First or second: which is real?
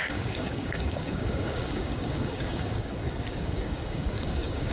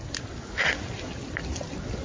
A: second